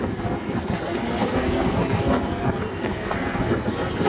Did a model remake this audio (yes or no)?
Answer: yes